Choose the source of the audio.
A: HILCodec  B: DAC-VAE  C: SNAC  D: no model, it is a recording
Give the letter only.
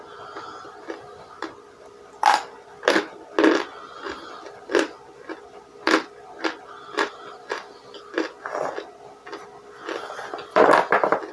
D